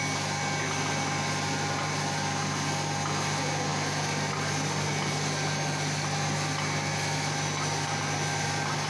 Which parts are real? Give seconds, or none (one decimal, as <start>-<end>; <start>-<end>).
0.0-8.9